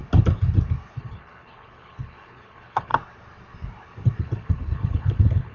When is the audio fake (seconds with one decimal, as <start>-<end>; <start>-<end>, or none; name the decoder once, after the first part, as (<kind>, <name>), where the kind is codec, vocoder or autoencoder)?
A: 1.0-2.9 (codec, HILCodec); 4.2-5.5